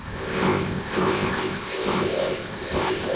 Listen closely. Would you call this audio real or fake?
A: fake